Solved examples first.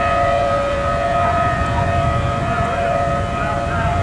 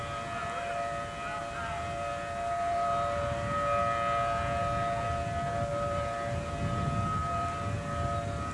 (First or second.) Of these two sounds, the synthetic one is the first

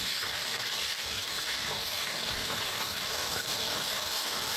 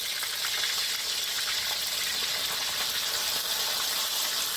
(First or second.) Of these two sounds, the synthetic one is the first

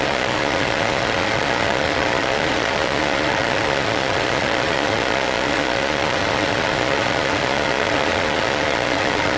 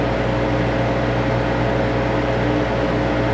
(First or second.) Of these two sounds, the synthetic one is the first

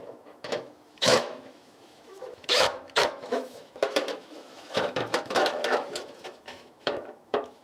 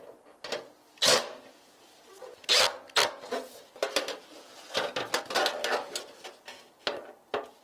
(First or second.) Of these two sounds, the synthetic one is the first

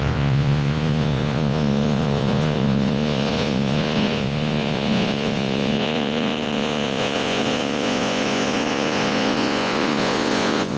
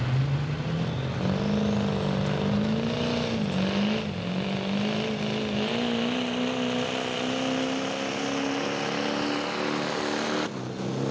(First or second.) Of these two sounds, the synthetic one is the first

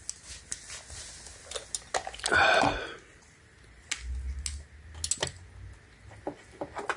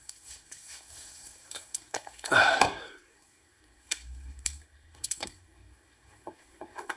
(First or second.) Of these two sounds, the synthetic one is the second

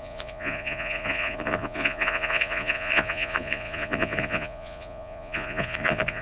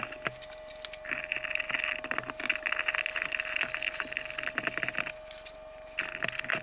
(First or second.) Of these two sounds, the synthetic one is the first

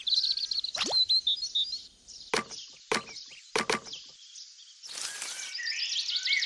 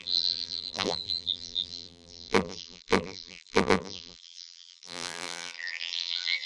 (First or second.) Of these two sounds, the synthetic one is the second